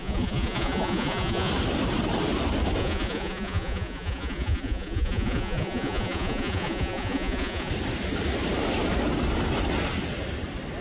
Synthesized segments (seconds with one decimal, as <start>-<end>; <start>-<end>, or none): 0.0-1.5; 2.8-7.7